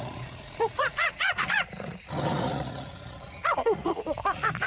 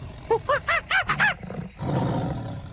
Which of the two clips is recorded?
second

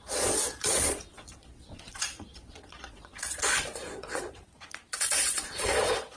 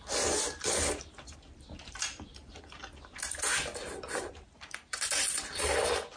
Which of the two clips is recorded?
second